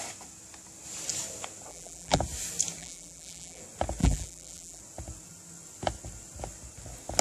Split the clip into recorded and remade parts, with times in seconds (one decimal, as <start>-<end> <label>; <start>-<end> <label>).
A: 0.0-1.7 recorded; 1.7-2.2 remade; 2.2-2.8 recorded; 2.8-3.6 remade; 3.6-4.0 recorded; 4.0-4.8 remade; 4.8-7.2 recorded